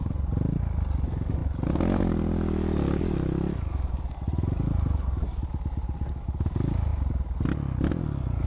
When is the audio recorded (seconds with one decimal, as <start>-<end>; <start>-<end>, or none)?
0.0-8.5

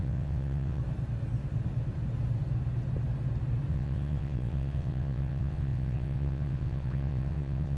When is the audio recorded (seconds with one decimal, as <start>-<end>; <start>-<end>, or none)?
0.8-3.7

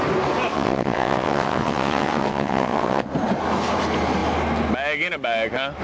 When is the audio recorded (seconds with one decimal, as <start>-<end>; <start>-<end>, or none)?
0.0-0.5; 3.1-5.8

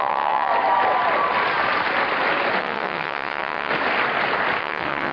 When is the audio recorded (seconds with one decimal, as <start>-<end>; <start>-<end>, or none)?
0.5-2.6; 3.7-4.6

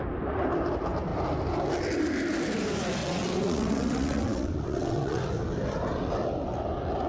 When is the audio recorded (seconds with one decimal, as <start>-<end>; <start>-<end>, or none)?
0.0-3.0; 5.2-7.1

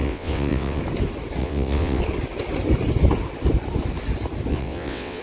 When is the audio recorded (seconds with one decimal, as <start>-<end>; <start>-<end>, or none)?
0.8-1.4; 2.0-4.5

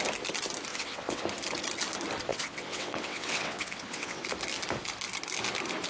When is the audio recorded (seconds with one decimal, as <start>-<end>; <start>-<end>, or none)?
0.0-0.7; 1.2-2.3; 4.2-5.9

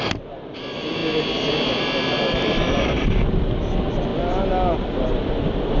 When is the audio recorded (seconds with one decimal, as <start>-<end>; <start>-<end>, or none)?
0.0-5.8